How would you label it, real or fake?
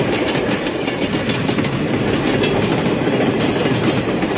real